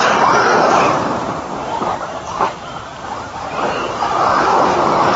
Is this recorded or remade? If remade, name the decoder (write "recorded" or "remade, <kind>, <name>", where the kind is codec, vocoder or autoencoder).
remade, vocoder, BigVGAN v2